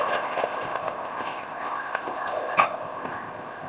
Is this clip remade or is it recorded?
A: remade